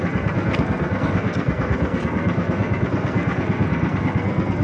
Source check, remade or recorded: remade